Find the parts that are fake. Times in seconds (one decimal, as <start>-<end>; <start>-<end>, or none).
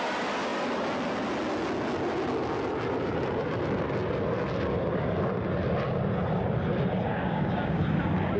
7.1-7.8